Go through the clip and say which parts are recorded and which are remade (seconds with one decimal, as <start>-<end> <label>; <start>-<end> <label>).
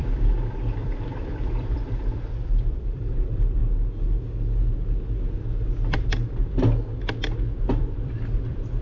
0.0-3.6 remade; 3.6-5.7 recorded; 5.7-6.4 remade; 6.4-7.4 recorded; 7.4-8.8 remade